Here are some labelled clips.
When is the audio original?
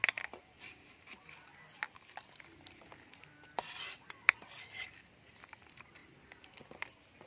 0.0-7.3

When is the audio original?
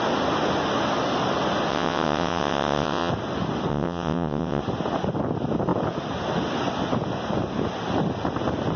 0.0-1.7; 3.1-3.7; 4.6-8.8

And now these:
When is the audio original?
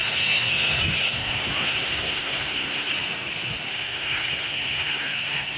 2.9-3.7